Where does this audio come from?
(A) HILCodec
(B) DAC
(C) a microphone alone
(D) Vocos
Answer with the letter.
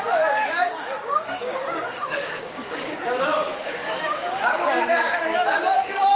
B